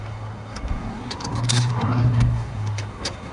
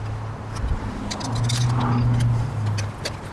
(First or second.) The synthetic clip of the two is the first